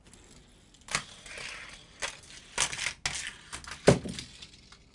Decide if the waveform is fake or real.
real